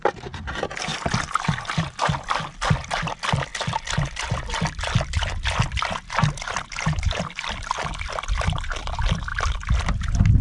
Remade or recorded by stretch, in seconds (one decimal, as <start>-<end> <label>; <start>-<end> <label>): 0.0-0.9 recorded; 0.9-2.0 remade; 2.0-3.5 recorded; 3.5-8.2 remade; 8.2-9.3 recorded; 9.3-10.4 remade